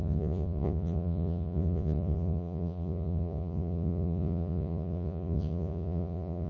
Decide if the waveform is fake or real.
fake